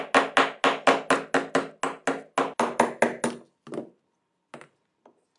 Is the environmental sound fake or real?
real